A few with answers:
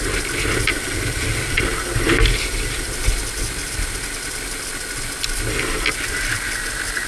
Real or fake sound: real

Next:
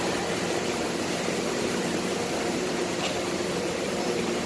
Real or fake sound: fake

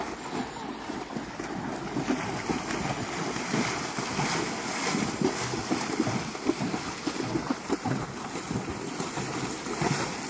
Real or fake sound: real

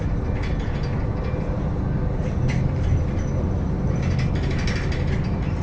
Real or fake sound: real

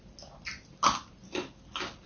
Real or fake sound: real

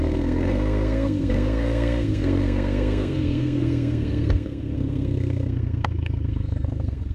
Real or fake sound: fake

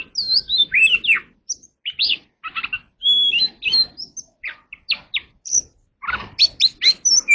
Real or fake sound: real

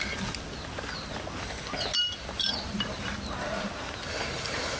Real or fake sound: real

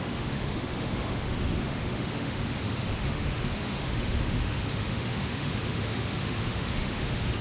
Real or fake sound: fake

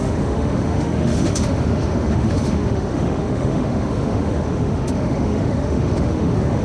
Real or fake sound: fake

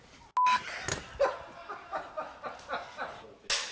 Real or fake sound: real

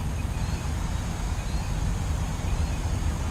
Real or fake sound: real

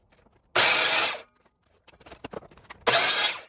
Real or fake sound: real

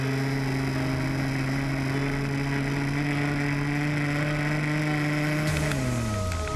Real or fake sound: real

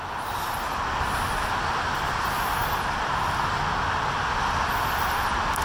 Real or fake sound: real